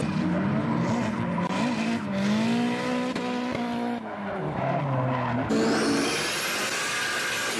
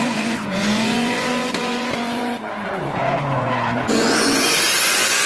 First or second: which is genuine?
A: first